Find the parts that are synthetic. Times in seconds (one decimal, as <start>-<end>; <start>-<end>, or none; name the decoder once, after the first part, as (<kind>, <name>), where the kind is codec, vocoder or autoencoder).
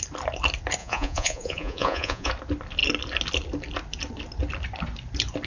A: 0.8-2.3 (vocoder, Vocos)